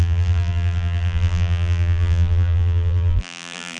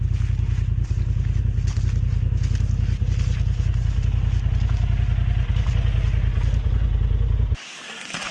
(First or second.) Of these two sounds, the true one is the second